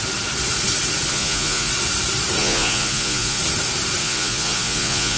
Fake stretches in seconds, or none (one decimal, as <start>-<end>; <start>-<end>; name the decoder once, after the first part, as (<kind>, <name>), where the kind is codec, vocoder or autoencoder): 1.1-1.7 (vocoder, Vocos); 2.4-3.4; 4.0-5.2